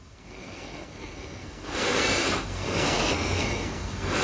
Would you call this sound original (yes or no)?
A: no